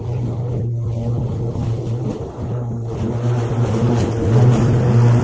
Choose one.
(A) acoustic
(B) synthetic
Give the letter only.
A